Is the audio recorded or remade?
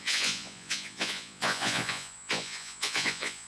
remade